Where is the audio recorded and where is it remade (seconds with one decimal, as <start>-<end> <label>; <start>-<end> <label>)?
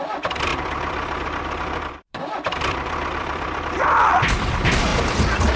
0.0-0.5 recorded; 0.5-3.8 remade; 3.8-5.6 recorded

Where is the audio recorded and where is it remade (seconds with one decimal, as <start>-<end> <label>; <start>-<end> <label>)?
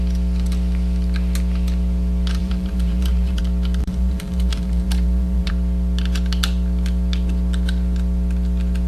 0.0-2.4 recorded; 2.4-3.4 remade; 3.4-3.8 recorded; 3.8-5.5 remade; 5.5-8.9 recorded